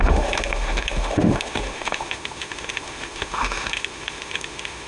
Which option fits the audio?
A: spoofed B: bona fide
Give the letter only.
A